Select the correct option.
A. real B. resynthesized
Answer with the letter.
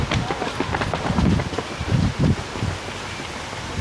B